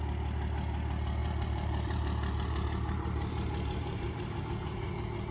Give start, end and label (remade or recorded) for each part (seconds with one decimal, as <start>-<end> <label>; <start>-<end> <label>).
0.0-1.2 recorded; 1.2-4.4 remade; 4.4-5.3 recorded